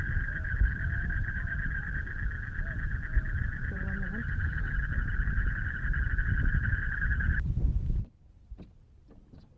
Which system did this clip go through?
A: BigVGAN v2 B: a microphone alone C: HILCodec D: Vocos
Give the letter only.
B